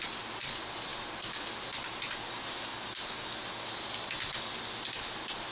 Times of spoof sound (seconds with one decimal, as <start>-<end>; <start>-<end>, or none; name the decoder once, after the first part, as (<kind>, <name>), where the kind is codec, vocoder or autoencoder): none